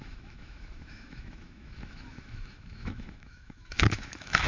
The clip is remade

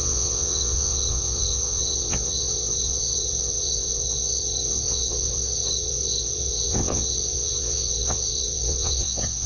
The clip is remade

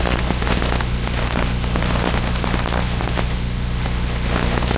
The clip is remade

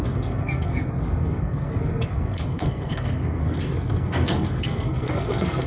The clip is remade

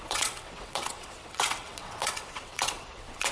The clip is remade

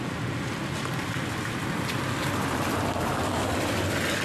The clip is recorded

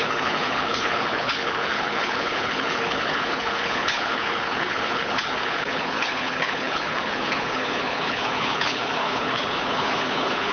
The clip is remade